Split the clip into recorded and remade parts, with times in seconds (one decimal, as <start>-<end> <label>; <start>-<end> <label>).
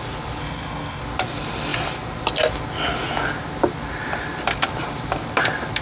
0.0-0.4 recorded; 0.4-1.0 remade; 1.0-5.8 recorded